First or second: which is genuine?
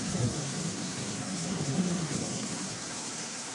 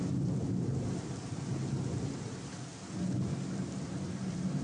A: second